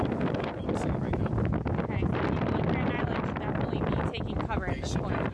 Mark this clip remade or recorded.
recorded